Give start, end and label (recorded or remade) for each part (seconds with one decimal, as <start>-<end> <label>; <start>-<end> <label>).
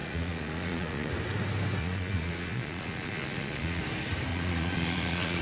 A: 0.0-1.1 remade; 1.1-1.8 recorded; 1.8-3.8 remade; 3.8-4.3 recorded; 4.3-5.4 remade